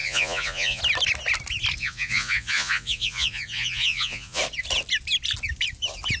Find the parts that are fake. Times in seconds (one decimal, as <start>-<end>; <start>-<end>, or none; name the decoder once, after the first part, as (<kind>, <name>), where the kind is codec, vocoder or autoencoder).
0.0-0.8 (vocoder, Vocos); 1.8-4.4

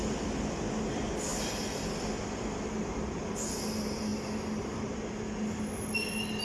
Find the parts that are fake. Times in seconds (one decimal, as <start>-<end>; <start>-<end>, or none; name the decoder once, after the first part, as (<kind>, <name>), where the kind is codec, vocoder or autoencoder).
none

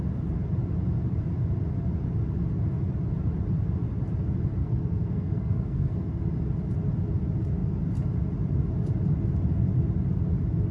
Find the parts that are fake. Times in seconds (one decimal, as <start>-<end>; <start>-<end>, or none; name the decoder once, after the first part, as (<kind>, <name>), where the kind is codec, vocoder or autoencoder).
4.6-6.2 (codec, SNAC)

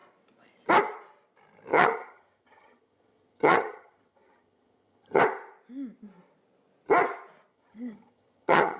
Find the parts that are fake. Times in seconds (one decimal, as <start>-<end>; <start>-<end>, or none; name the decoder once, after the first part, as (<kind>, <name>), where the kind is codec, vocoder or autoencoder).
1.7-5.2 (vocoder, HiFi-GAN); 7.5-8.8

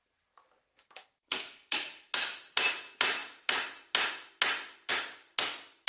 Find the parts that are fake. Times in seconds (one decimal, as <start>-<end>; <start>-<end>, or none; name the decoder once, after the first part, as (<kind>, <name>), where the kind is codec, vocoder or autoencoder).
0.7-1.7 (codec, DAC)

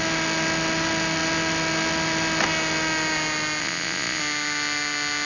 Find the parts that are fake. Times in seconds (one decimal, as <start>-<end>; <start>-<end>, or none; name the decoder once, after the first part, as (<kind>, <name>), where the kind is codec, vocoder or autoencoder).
3.6-4.2 (vocoder, Vocos)